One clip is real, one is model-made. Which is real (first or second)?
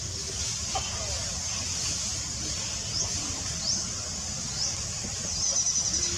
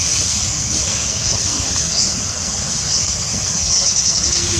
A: first